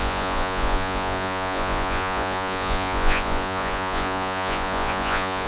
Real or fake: fake